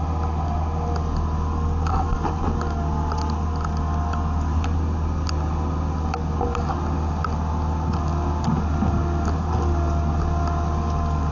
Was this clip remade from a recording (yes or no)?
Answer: no